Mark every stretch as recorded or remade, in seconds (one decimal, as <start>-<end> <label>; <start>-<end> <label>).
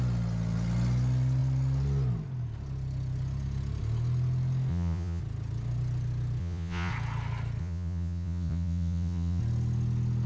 0.0-4.7 recorded; 4.7-5.2 remade; 5.2-6.4 recorded; 6.4-6.9 remade; 6.9-7.6 recorded; 7.6-9.4 remade; 9.4-10.3 recorded